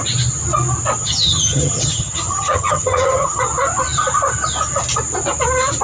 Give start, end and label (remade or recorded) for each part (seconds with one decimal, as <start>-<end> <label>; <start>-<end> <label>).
0.0-1.0 recorded; 1.0-3.4 remade; 3.4-5.8 recorded